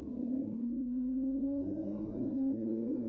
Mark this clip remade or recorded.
remade